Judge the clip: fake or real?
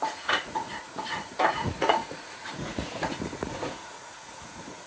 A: fake